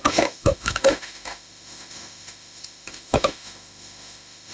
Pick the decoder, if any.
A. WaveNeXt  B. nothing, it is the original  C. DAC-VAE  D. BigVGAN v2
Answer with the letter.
C